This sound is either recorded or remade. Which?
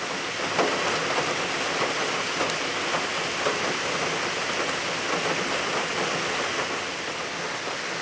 recorded